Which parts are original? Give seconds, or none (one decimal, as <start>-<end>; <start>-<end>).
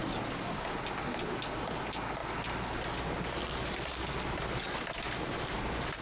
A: 0.0-6.0